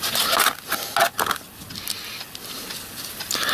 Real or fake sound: real